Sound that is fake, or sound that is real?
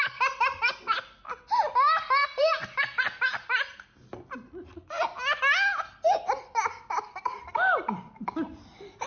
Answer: real